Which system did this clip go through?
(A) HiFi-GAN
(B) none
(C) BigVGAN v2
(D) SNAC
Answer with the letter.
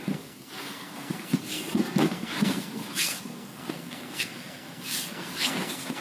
D